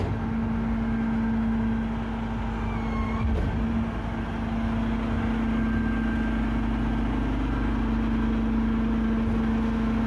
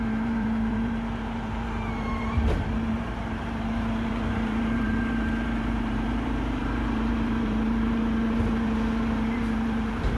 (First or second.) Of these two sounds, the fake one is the second